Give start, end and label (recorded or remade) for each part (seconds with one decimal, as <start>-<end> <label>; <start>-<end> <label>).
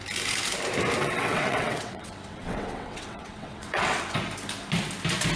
0.0-1.0 recorded; 1.0-4.2 remade; 4.2-5.4 recorded